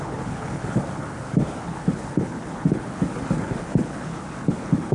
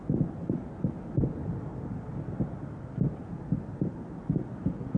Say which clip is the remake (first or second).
first